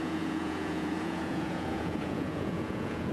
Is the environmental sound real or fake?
fake